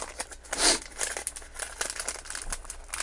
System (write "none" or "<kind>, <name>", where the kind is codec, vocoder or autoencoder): none